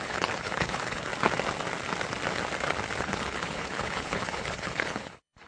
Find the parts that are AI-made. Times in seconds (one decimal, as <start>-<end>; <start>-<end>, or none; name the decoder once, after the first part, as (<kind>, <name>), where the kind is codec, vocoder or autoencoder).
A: 0.0-1.1 (codec, HILCodec); 3.0-5.5